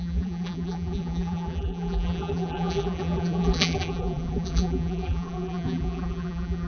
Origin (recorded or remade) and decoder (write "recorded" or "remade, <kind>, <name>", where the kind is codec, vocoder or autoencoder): remade, vocoder, BigVGAN v2